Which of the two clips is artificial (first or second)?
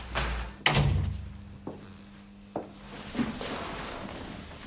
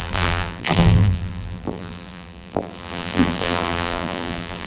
second